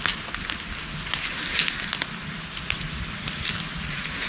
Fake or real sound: real